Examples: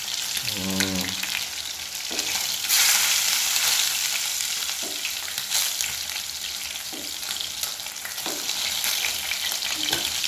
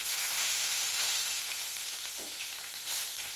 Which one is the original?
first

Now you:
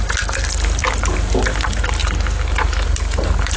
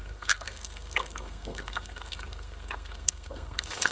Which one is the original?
first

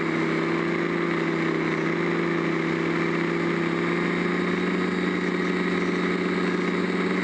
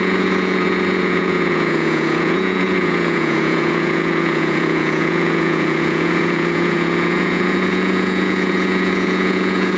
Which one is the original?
first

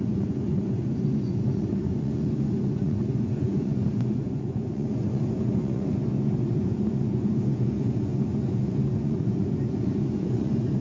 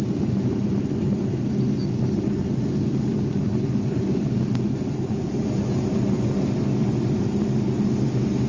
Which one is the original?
second